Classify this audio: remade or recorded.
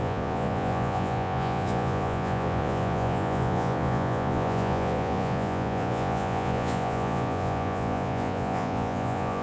remade